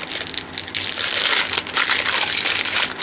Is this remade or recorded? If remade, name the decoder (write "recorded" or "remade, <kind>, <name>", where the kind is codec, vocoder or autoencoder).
recorded